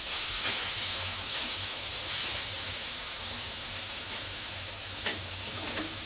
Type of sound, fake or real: fake